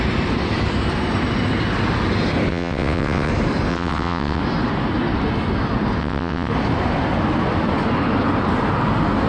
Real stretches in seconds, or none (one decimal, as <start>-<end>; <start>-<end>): 0.0-2.5; 3.3-3.7; 4.4-6.0; 6.5-9.3